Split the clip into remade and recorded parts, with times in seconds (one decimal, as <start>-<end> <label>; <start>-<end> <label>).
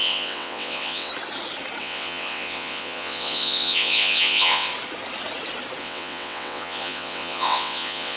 0.0-1.1 remade; 1.1-1.8 recorded; 1.8-4.7 remade; 4.7-5.8 recorded; 5.8-8.2 remade